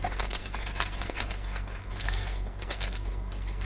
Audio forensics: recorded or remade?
remade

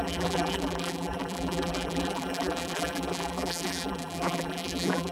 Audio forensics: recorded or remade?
remade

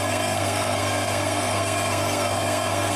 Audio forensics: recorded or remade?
remade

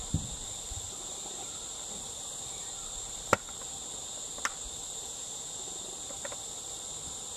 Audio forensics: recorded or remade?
recorded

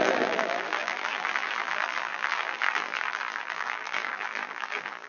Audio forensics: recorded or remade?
remade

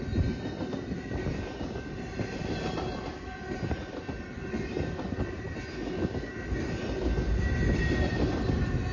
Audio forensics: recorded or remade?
recorded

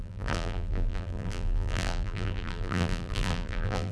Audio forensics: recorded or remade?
remade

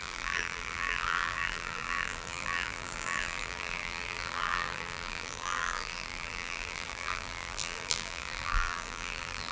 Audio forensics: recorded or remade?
remade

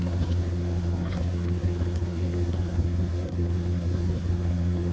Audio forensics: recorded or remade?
remade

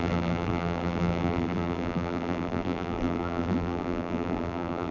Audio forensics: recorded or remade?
remade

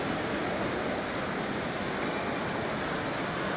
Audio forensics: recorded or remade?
recorded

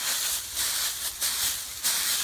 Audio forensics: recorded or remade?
recorded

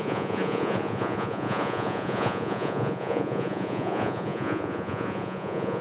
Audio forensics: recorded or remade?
remade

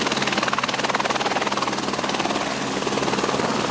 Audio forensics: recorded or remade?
recorded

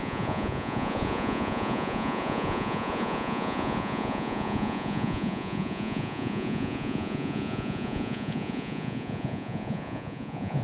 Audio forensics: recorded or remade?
remade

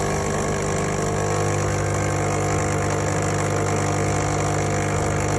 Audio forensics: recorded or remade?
recorded